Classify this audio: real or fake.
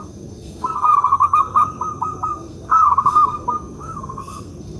fake